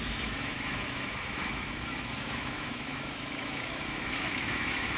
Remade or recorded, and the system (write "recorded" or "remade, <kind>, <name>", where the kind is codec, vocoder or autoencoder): remade, autoencoder, DAC-VAE